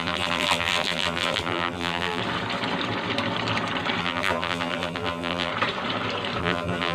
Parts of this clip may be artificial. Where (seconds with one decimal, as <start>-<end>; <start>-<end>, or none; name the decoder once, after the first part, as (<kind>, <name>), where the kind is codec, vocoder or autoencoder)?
0.0-2.2 (vocoder, BigVGAN v2); 4.0-5.5; 6.4-6.9